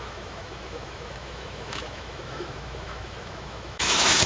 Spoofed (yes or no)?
yes